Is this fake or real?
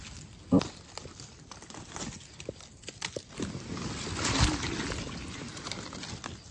real